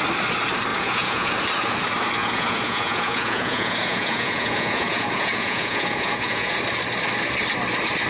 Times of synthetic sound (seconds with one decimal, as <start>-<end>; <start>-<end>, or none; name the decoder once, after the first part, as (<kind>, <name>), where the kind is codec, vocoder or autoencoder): 0.7-1.3 (vocoder, Vocos); 2.2-6.6